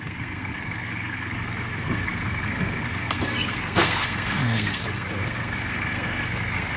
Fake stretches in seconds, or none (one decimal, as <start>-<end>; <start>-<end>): 0.0-6.8